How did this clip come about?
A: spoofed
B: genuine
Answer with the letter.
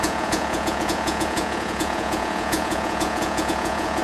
A